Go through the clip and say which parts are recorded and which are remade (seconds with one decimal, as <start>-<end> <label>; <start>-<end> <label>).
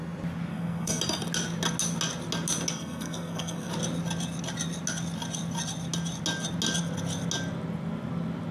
0.0-0.5 recorded; 0.5-1.0 remade; 1.0-2.7 recorded; 2.7-3.7 remade; 3.7-8.5 recorded